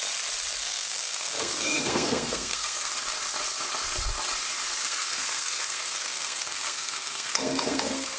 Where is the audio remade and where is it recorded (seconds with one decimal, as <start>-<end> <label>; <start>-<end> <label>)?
0.0-0.6 recorded; 0.6-2.9 remade; 2.9-4.8 recorded; 4.8-8.2 remade